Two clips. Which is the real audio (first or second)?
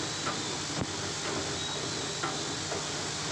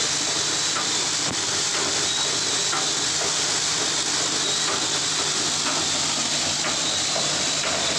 first